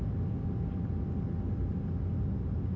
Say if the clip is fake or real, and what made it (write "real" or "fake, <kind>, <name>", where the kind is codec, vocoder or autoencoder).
real